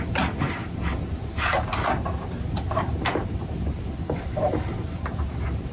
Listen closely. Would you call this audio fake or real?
real